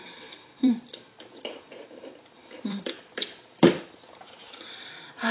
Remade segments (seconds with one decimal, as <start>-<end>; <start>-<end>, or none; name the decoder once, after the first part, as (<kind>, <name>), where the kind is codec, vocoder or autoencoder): 0.0-5.3 (vocoder, BigVGAN v2)